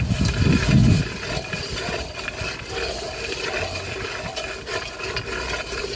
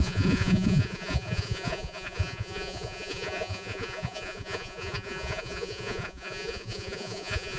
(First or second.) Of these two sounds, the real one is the first